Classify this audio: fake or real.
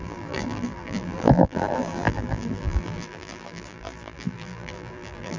fake